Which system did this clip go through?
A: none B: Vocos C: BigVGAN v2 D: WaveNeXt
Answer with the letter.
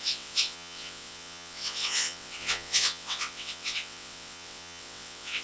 D